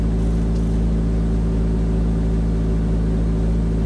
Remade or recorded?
recorded